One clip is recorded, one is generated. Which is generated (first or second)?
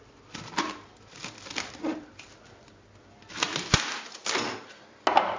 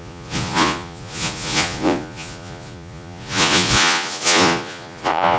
second